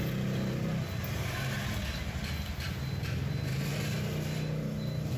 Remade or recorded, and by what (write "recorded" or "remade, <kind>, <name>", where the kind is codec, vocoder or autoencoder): recorded